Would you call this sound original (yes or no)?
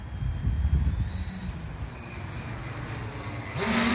yes